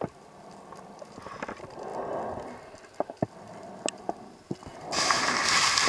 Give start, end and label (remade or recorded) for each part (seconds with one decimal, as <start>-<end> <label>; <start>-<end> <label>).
0.0-5.9 recorded